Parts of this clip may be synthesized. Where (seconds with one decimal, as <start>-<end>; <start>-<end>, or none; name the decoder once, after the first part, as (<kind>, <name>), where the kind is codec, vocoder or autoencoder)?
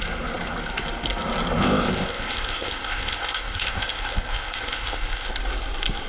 1.6-5.3 (codec, ZipCodec)